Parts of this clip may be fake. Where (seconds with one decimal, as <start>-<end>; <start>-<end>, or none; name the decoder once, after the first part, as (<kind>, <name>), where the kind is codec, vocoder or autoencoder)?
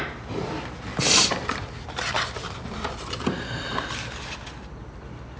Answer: 0.9-4.1 (vocoder, BigVGAN v2)